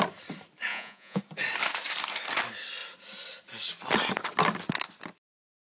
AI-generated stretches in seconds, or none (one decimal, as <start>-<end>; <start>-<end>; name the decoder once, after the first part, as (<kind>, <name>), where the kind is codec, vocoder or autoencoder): 0.7-1.2 (vocoder, Vocos)